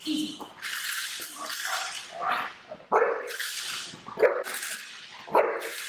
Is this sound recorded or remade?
recorded